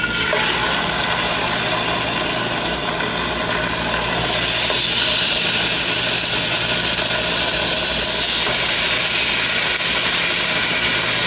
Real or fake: real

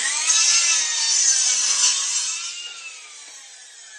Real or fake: real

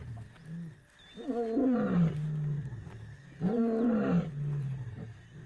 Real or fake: real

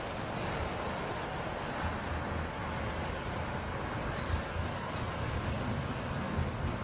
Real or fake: real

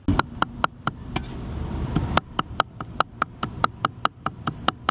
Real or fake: fake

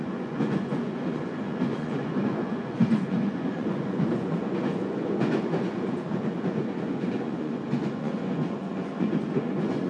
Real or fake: fake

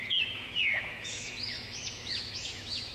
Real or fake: fake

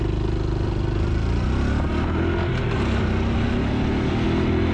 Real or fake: real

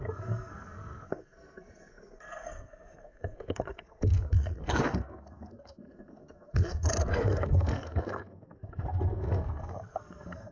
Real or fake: fake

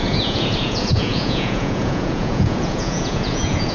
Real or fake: fake